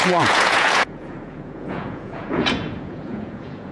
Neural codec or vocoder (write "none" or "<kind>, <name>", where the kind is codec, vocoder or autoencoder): vocoder, Vocos